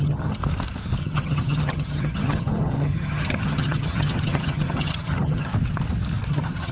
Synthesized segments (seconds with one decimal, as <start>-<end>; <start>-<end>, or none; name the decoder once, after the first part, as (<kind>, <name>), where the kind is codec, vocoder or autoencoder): 0.0-0.4 (vocoder, HiFi-GAN); 1.0-5.5; 6.3-6.7